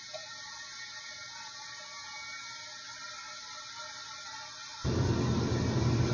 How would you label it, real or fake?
real